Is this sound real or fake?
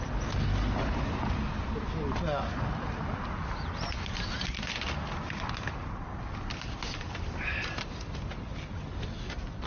real